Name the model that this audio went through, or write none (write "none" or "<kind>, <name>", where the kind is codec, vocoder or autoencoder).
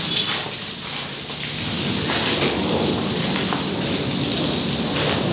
none